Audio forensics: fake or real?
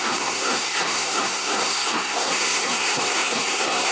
fake